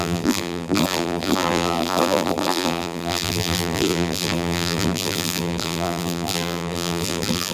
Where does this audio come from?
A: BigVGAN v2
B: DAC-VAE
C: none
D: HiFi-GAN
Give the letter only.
A